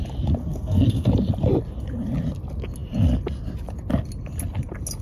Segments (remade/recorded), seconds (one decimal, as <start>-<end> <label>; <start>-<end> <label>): 0.0-0.4 recorded; 0.4-1.1 remade; 1.1-5.0 recorded